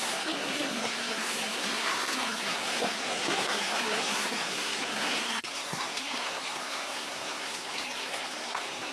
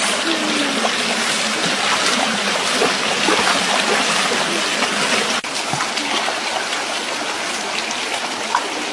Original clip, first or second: second